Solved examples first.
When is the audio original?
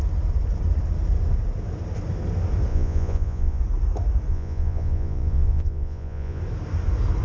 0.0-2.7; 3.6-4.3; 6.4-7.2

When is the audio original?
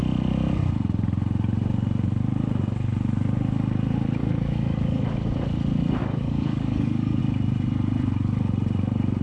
0.0-4.2; 5.0-6.0; 7.2-9.2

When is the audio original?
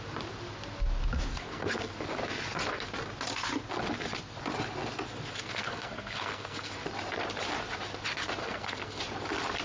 0.0-1.3; 1.9-5.3; 6.7-8.4; 9.0-9.6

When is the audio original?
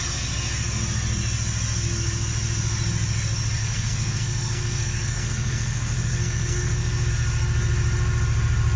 0.0-3.6; 7.1-8.8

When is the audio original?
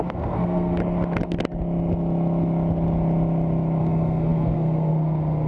0.8-3.8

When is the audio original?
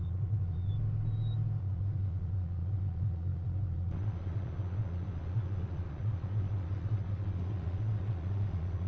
0.7-1.6